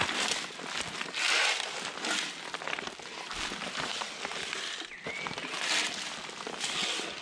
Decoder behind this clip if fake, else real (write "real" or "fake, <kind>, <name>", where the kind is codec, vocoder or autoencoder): real